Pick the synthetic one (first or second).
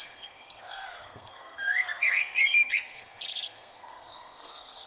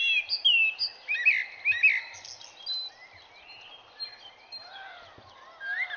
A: first